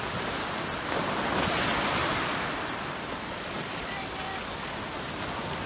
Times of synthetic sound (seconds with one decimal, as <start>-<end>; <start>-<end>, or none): 2.0-4.1